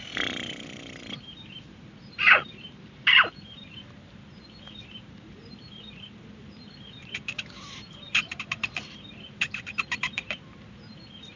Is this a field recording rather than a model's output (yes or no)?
no